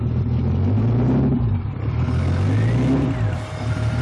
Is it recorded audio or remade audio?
recorded